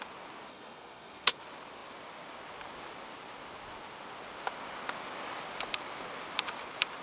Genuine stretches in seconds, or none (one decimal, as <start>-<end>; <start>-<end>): 0.0-0.5; 1.4-7.0

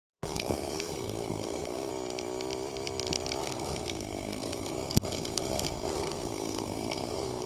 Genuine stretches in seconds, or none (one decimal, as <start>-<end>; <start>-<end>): 1.9-3.4

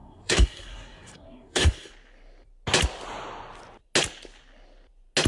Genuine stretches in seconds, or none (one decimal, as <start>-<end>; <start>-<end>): 1.9-5.3

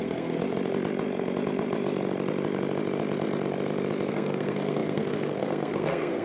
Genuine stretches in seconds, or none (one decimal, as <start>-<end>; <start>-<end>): 0.4-4.1